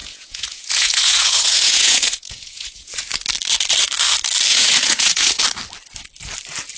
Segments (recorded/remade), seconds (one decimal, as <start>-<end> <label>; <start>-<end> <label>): 0.0-3.1 remade; 3.1-4.5 recorded; 4.5-5.4 remade; 5.4-6.8 recorded